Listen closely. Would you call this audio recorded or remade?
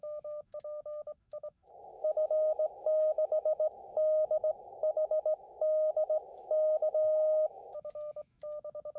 remade